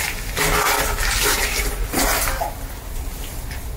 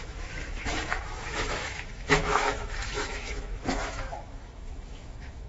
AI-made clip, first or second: second